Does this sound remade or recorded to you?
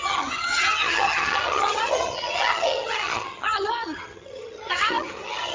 remade